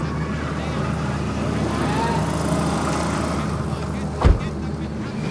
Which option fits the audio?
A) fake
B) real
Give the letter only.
B